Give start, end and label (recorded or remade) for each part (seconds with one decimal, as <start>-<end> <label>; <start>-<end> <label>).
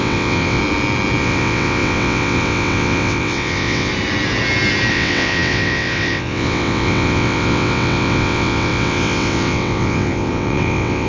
0.0-0.6 remade; 0.6-1.2 recorded; 1.2-3.9 remade; 3.9-4.9 recorded; 4.9-11.1 remade